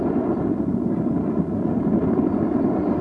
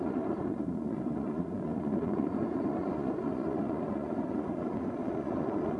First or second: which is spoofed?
second